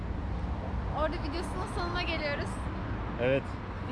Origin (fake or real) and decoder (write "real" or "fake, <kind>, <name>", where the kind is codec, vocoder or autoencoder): real